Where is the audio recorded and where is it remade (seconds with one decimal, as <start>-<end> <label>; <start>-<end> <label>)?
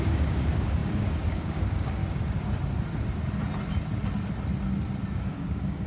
0.0-2.0 remade; 2.0-5.2 recorded; 5.2-5.9 remade